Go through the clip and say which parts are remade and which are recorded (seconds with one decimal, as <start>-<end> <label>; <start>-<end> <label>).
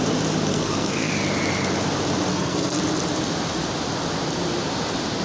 0.0-0.5 recorded; 0.5-1.1 remade; 1.1-2.3 recorded; 2.3-2.8 remade; 2.8-5.2 recorded